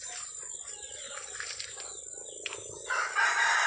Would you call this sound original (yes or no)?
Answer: yes